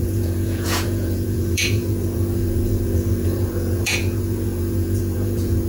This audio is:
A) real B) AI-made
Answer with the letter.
B